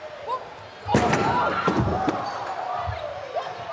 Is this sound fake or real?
real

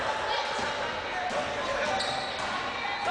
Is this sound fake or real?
real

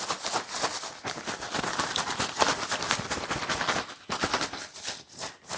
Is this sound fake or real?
real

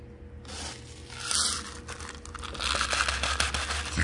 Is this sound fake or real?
real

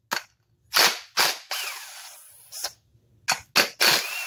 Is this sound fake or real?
real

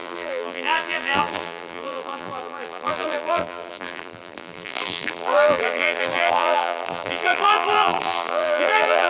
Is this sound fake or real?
fake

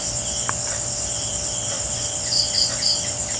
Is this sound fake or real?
real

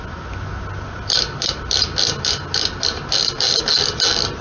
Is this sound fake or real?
real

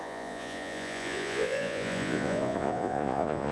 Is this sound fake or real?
fake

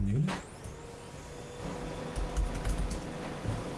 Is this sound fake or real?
real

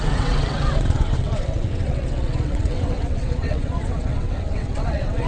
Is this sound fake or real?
fake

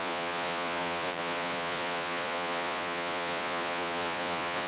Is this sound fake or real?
fake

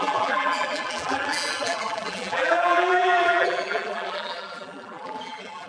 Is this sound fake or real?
fake